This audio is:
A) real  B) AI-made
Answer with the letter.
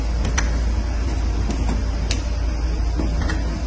A